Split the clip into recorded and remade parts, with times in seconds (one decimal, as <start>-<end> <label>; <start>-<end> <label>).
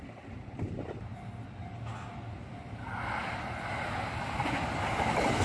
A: 0.0-5.4 recorded